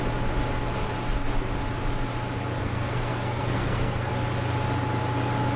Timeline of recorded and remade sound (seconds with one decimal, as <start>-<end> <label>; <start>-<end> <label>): 0.0-2.6 recorded; 2.6-4.1 remade; 4.1-5.6 recorded